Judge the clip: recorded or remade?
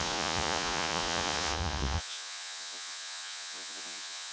remade